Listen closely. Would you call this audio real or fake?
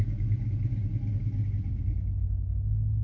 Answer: real